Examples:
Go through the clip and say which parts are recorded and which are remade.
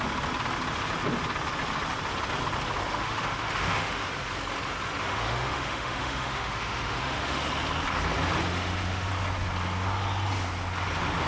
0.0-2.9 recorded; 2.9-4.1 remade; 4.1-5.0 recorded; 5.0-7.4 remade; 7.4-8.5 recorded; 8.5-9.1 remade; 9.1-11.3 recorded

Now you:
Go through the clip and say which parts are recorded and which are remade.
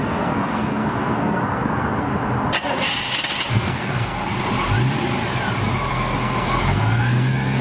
0.0-2.1 remade; 2.1-3.5 recorded; 3.5-4.3 remade; 4.3-5.9 recorded; 5.9-7.6 remade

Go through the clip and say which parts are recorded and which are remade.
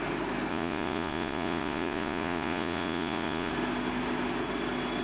0.0-0.5 recorded; 0.5-3.5 remade; 3.5-5.0 recorded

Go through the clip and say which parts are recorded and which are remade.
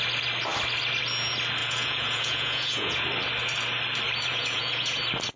0.0-1.6 recorded; 1.6-3.0 remade; 3.0-4.3 recorded; 4.3-5.0 remade; 5.0-5.4 recorded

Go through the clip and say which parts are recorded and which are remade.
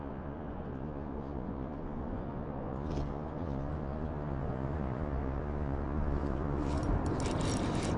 0.0-6.8 remade; 6.8-8.0 recorded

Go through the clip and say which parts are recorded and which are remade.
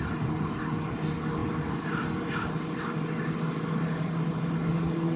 0.0-5.2 recorded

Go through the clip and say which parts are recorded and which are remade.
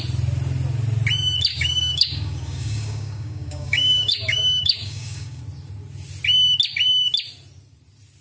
0.0-1.5 recorded; 1.5-5.4 remade; 5.4-8.2 recorded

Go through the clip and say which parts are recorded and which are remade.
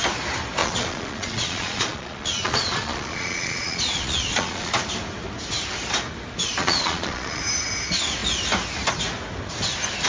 0.0-0.6 recorded; 0.6-4.7 remade; 4.7-6.6 recorded; 6.6-7.4 remade; 7.4-10.1 recorded